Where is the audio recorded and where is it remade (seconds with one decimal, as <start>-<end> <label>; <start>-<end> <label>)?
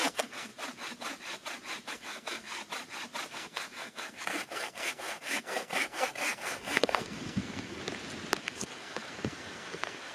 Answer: 0.0-0.5 remade; 0.5-1.9 recorded; 1.9-2.6 remade; 2.6-3.3 recorded; 3.3-7.8 remade; 7.8-8.4 recorded; 8.4-10.1 remade